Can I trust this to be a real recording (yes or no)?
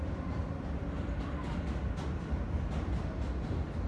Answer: yes